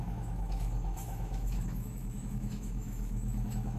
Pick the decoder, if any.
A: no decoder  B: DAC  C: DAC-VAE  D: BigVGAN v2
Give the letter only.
C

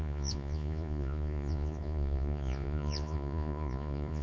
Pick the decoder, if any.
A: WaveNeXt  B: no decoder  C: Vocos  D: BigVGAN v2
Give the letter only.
C